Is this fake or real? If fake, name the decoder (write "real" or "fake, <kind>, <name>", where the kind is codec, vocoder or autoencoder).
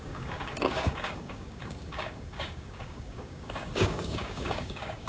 fake, codec, DAC